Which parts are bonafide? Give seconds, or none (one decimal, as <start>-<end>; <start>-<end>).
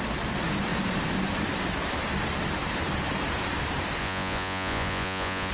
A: 0.0-4.0